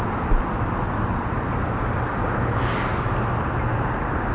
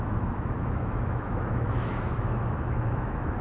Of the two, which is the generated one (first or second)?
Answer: second